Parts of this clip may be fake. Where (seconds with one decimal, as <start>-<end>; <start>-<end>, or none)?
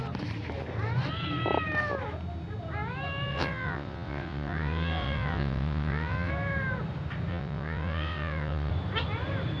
3.3-6.3; 7.3-8.7